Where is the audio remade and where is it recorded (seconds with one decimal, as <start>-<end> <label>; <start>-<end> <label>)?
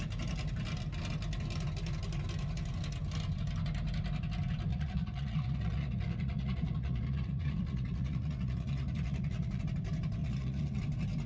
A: 0.0-4.7 recorded; 4.7-9.6 remade; 9.6-10.2 recorded; 10.2-10.8 remade; 10.8-11.3 recorded